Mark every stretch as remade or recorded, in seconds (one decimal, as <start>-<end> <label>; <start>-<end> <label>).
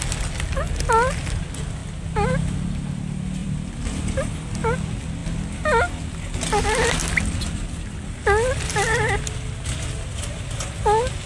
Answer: 0.0-3.4 recorded; 3.4-3.9 remade; 3.9-11.3 recorded